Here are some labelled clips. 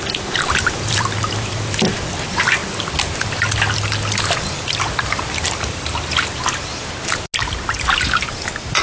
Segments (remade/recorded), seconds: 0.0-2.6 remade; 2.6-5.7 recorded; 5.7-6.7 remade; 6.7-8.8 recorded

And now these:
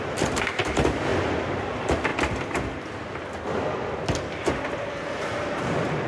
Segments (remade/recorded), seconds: 0.0-1.1 remade; 1.1-1.6 recorded; 1.6-2.1 remade; 2.1-5.2 recorded; 5.2-6.1 remade

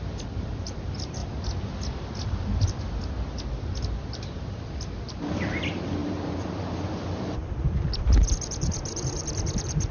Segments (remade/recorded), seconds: 0.0-1.2 remade; 1.2-4.1 recorded; 4.1-9.9 remade